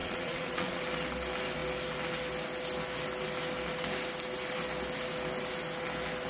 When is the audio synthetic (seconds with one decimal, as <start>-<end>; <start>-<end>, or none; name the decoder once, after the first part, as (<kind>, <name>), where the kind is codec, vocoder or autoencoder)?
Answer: 0.0-0.8 (vocoder, Vocos)